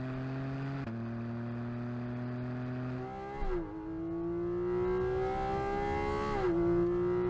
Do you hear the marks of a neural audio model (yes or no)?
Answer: no